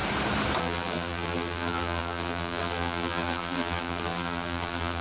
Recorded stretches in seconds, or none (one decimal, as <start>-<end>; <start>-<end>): 0.0-0.6